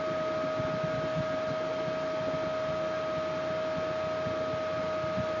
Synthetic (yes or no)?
no